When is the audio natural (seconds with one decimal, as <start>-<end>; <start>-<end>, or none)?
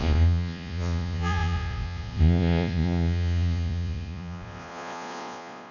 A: none